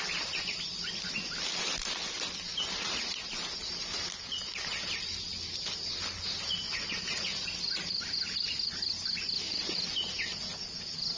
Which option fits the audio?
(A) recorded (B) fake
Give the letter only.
A